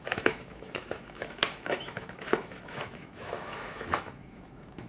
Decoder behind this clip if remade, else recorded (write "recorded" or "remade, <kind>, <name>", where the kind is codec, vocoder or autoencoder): remade, autoencoder, DAC-VAE